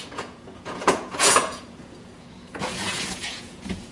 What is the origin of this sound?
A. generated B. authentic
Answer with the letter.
A